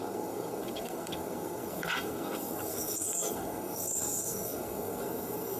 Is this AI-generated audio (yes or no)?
yes